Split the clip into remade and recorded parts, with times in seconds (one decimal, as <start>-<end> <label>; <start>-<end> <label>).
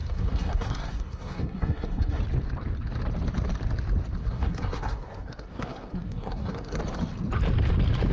0.0-2.2 remade; 2.2-4.2 recorded; 4.2-6.8 remade; 6.8-8.1 recorded